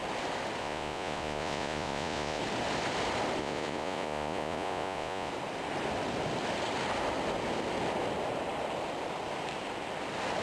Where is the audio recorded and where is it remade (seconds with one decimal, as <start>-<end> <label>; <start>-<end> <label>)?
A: 0.0-0.6 recorded; 0.6-2.4 remade; 2.4-3.4 recorded; 3.4-5.3 remade; 5.3-10.4 recorded

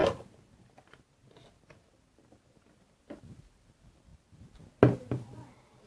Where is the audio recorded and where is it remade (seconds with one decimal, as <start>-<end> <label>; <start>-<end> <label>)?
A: 0.0-5.9 recorded

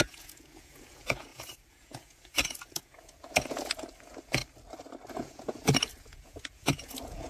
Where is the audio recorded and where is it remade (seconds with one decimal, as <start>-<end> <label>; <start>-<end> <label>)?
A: 0.0-4.4 remade; 4.4-5.1 recorded; 5.1-7.3 remade

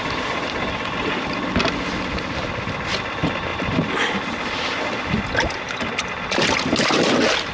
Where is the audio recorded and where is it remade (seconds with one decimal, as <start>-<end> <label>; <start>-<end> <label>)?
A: 0.0-7.5 recorded

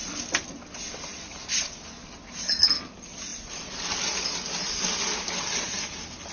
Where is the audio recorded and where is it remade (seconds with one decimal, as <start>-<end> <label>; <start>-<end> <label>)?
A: 0.0-6.3 recorded

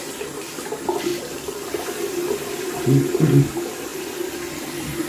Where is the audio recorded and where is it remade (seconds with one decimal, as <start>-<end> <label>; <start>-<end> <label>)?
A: 0.0-5.1 recorded

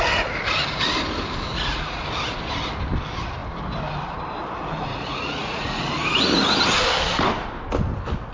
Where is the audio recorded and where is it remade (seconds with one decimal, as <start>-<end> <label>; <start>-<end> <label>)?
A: 0.0-1.5 recorded; 1.5-2.0 remade; 2.0-4.9 recorded; 4.9-5.8 remade; 5.8-8.3 recorded